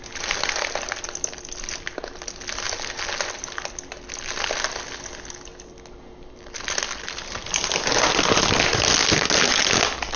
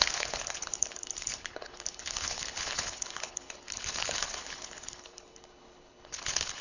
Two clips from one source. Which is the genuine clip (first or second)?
first